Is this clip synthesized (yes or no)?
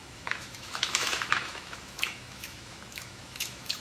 yes